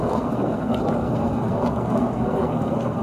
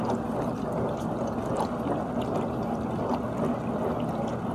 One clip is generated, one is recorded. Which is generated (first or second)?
first